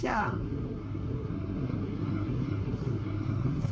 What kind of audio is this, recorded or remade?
remade